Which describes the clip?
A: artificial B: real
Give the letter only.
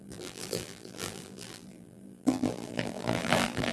A